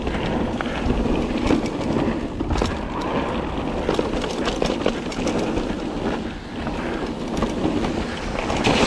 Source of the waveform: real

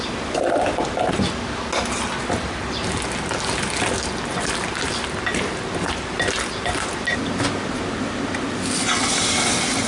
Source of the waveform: real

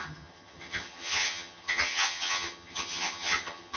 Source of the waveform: fake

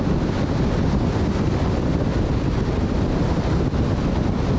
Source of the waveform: real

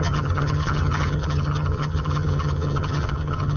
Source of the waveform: fake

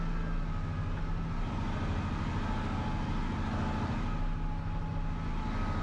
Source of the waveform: real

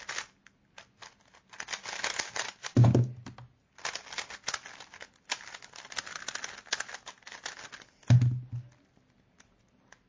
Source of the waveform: real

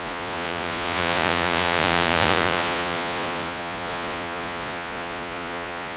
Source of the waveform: fake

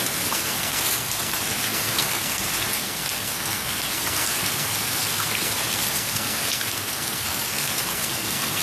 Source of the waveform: fake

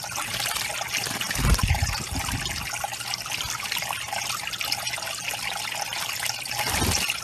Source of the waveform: real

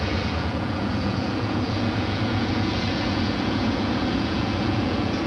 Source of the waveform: fake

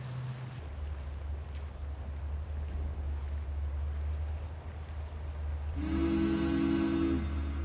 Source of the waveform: real